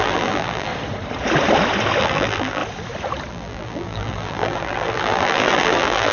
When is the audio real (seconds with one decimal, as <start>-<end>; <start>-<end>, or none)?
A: 0.7-2.0; 2.6-3.3